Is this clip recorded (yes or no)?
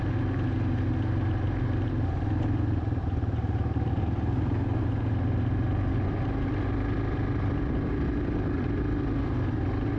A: yes